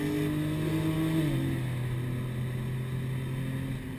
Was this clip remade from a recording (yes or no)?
no